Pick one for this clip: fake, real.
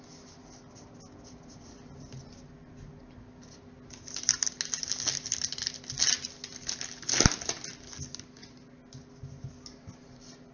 real